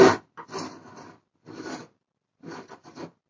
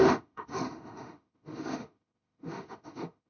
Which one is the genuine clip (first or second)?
first